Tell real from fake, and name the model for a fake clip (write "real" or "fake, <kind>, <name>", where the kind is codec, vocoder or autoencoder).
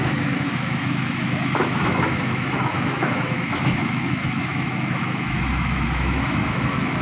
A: fake, autoencoder, DAC-VAE